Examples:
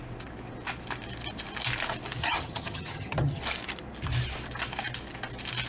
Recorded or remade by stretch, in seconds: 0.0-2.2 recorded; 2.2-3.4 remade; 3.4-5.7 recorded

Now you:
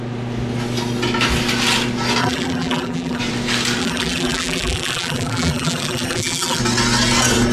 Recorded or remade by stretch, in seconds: 0.0-2.2 recorded; 2.2-3.2 remade; 3.2-3.8 recorded; 3.8-6.6 remade; 6.6-7.5 recorded

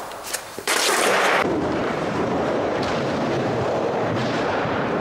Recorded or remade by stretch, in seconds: 0.0-5.0 remade

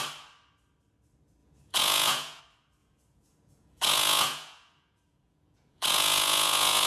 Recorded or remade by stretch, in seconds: 0.0-1.4 recorded; 1.4-2.4 remade; 2.4-2.8 recorded; 2.8-6.9 remade

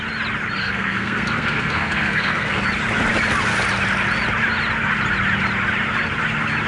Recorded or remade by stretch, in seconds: 0.0-0.6 recorded; 0.6-2.6 remade; 2.6-6.7 recorded

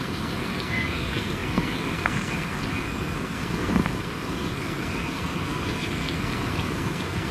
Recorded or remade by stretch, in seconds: 0.0-7.3 remade

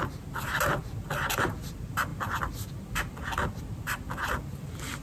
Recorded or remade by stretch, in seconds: 0.0-5.0 recorded